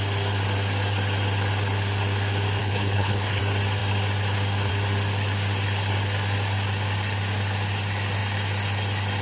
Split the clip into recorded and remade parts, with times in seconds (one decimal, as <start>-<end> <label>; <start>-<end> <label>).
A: 0.0-2.6 recorded; 2.6-3.4 remade; 3.4-9.2 recorded